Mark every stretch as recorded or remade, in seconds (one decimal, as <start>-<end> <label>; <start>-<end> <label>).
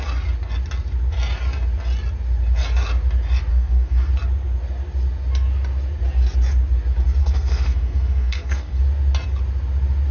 0.0-3.5 recorded; 3.5-4.1 remade; 4.1-7.2 recorded; 7.2-8.8 remade; 8.8-10.1 recorded